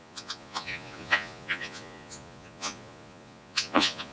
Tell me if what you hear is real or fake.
fake